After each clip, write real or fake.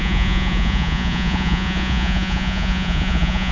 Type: fake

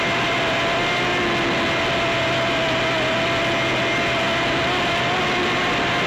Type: real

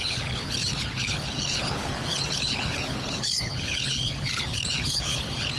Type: fake